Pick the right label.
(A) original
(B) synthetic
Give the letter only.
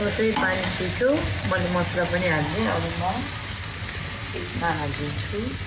A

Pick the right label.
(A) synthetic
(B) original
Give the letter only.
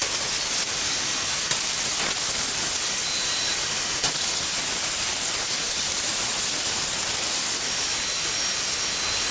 B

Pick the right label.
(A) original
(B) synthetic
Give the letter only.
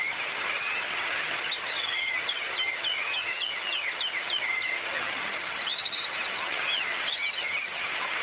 B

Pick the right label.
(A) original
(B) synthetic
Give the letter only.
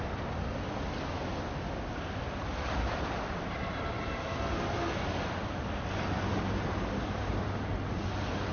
A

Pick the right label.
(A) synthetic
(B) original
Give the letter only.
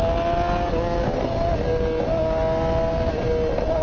B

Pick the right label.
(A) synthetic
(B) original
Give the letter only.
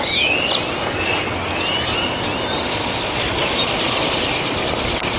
B